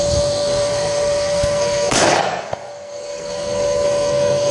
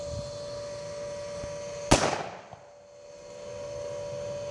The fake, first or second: first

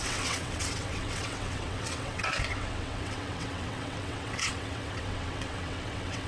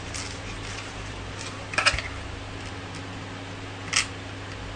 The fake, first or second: first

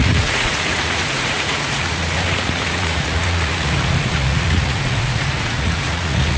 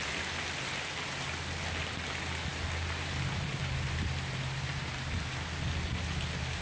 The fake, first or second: first